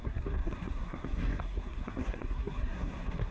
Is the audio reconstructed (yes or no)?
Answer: yes